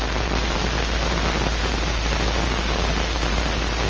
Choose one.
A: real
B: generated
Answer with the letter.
A